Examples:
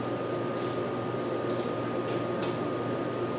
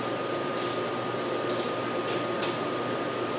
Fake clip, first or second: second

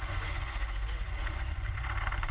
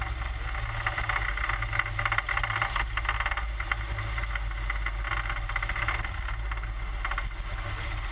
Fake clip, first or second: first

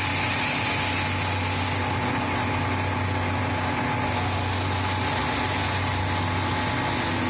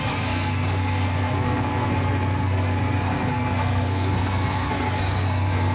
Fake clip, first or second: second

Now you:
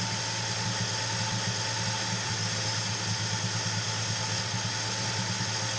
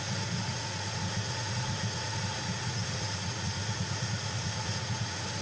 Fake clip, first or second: second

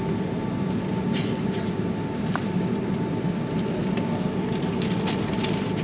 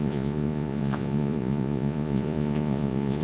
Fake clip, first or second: second